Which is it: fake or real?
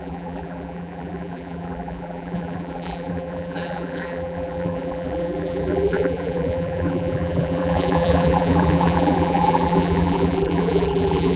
fake